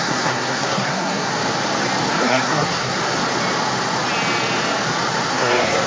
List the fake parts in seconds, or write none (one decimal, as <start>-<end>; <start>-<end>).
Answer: 0.0-1.3; 2.1-3.0; 5.3-5.9